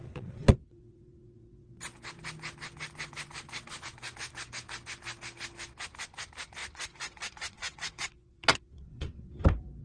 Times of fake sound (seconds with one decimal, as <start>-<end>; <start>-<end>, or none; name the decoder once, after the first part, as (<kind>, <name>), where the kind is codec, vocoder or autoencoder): 0.0-1.7 (vocoder, WaveNeXt); 6.6-9.4